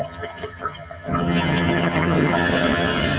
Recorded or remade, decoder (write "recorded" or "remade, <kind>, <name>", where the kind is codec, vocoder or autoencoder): remade, vocoder, HiFi-GAN